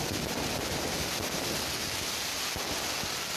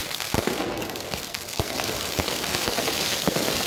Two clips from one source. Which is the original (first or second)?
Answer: first